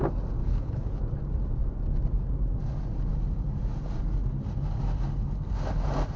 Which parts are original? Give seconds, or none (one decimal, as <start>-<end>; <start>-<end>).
0.0-0.4; 1.0-6.2